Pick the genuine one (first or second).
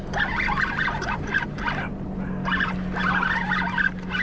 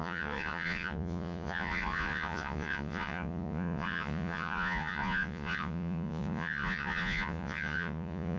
first